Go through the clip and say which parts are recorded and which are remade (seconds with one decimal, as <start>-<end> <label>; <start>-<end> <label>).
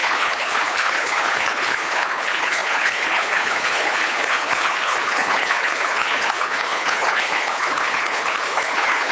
0.0-9.1 remade